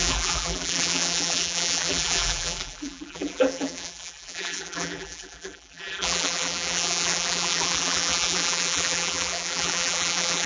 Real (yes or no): no